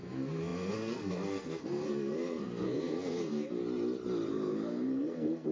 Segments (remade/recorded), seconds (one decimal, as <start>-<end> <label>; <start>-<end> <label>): 0.0-3.6 remade; 3.6-4.3 recorded; 4.3-5.5 remade